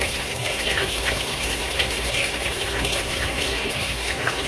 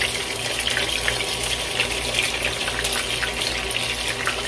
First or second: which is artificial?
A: first